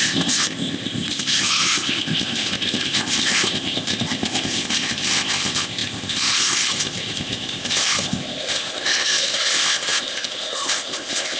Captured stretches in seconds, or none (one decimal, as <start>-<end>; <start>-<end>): none